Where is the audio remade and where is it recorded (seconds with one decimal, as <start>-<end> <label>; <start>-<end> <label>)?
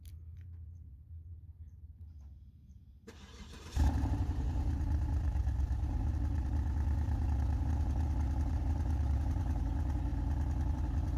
0.0-10.1 remade; 10.1-10.7 recorded; 10.7-11.2 remade